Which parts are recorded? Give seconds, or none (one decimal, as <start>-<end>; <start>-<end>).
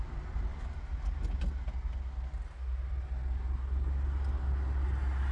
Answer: 0.0-5.3